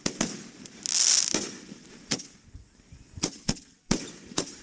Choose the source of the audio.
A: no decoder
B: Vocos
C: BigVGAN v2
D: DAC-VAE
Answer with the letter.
A